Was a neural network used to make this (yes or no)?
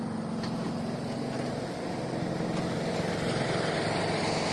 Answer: no